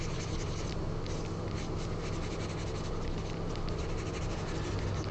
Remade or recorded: recorded